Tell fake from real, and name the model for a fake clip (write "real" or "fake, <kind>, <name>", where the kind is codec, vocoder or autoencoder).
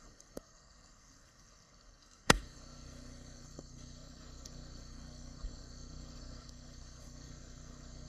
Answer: fake, codec, SNAC